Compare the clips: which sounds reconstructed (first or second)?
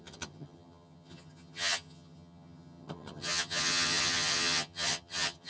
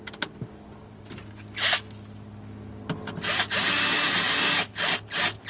first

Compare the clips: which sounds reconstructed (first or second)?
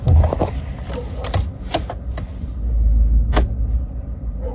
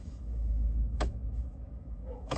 second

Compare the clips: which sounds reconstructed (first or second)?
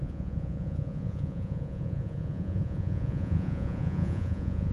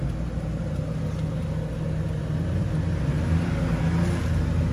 first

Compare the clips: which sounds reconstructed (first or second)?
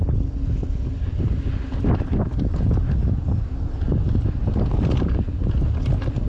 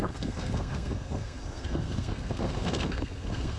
second